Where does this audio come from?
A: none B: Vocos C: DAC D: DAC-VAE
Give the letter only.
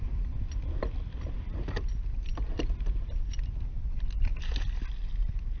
A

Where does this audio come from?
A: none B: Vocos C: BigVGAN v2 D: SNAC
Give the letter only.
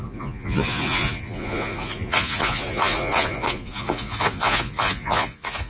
B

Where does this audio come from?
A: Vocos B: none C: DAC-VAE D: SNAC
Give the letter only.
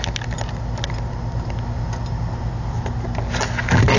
B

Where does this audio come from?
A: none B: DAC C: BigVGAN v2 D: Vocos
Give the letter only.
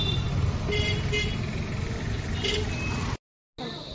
A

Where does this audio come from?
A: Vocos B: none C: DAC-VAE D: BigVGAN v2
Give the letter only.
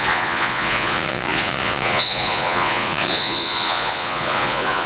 A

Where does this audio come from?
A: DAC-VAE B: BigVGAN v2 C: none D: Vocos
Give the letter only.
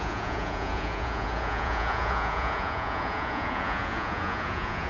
D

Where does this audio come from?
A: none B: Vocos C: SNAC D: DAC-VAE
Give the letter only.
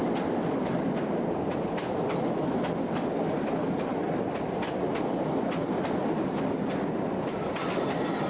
A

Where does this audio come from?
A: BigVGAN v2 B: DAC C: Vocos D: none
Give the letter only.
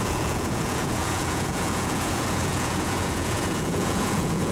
C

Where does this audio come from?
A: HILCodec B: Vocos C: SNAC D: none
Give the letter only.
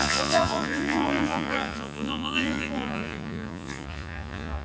B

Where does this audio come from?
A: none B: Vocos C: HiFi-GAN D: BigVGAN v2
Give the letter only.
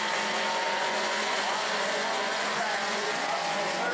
B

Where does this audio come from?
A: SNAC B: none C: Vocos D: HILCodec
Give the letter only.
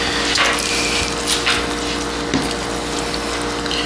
B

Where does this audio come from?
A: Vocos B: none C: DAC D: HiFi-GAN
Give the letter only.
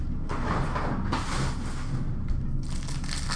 B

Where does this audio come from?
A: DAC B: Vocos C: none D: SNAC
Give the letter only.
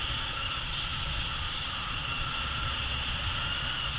B